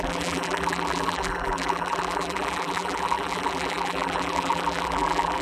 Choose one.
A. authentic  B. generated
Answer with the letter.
B